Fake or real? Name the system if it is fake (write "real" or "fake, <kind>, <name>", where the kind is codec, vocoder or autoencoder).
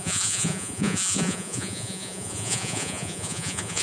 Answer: fake, vocoder, Vocos